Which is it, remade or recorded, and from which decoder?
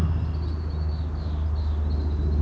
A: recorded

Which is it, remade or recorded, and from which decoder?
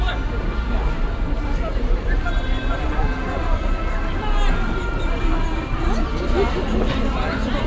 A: recorded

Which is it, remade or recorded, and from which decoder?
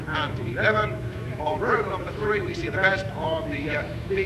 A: remade, autoencoder, DAC-VAE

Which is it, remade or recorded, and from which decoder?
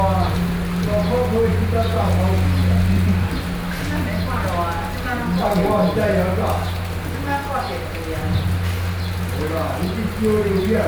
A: recorded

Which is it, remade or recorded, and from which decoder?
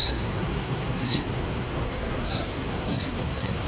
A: remade, codec, SNAC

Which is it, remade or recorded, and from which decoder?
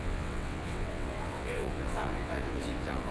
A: remade, vocoder, WaveNeXt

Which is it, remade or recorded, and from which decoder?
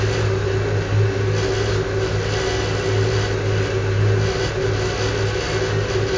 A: recorded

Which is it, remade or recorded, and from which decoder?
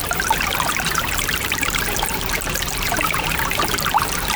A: remade, vocoder, BigVGAN v2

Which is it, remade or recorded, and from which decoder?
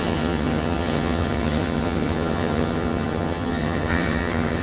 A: remade, vocoder, HiFi-GAN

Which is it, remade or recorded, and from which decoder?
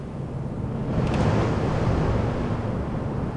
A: recorded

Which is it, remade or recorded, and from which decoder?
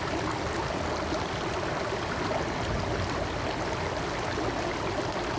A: recorded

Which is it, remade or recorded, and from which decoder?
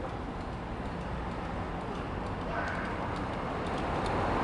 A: recorded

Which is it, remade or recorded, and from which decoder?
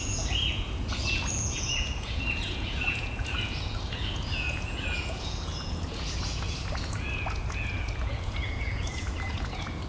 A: remade, vocoder, Vocos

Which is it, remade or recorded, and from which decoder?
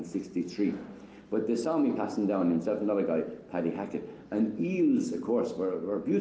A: recorded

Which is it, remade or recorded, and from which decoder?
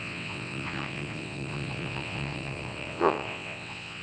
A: remade, vocoder, WaveNeXt